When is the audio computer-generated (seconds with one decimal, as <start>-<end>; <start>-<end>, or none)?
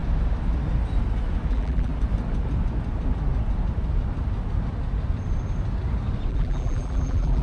1.5-1.9; 6.3-7.4